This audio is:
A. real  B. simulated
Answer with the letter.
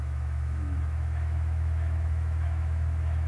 B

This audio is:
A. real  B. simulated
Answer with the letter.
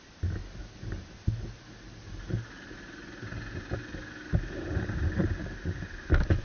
A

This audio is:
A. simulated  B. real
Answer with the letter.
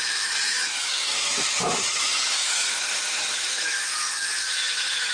A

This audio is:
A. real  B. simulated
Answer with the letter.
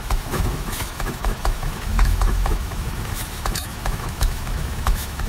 B